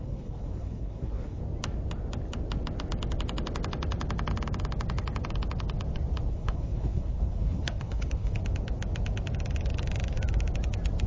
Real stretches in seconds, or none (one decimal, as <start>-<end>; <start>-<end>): 1.4-6.3; 8.4-11.1